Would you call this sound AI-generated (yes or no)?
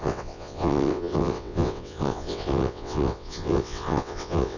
yes